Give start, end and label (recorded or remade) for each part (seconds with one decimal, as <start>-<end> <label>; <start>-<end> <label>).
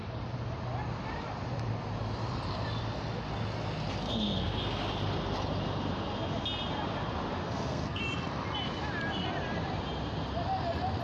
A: 0.0-4.0 recorded; 4.0-4.6 remade; 4.6-7.4 recorded; 7.4-8.0 remade; 8.0-11.0 recorded